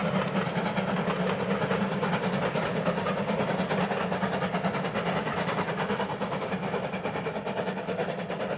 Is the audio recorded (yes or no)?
yes